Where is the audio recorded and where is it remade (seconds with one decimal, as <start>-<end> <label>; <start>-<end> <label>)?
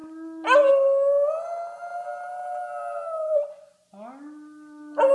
0.0-5.1 recorded